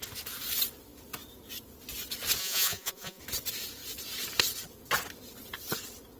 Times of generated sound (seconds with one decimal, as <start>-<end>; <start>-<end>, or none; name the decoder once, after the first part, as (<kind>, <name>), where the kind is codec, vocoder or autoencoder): 2.4-3.2 (vocoder, Vocos)